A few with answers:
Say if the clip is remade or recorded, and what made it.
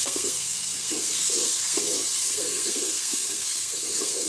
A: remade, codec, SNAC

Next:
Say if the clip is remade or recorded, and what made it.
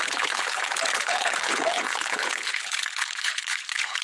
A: remade, codec, HILCodec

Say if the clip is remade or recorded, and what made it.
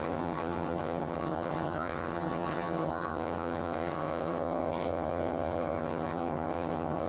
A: remade, vocoder, HiFi-GAN